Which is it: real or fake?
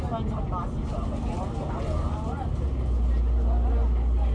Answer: real